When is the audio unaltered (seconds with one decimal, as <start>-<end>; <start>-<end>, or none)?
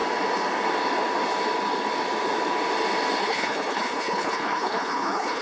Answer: 0.0-3.2